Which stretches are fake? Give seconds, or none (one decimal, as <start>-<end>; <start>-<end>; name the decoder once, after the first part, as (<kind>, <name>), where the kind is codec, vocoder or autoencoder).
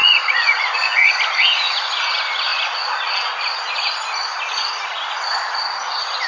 0.0-1.1 (vocoder, Vocos)